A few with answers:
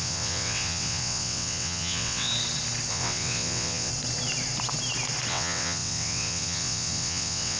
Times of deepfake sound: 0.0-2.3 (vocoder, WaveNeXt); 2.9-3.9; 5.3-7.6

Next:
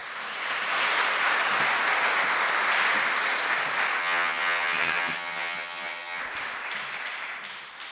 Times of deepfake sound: 4.0-6.2 (vocoder, HiFi-GAN)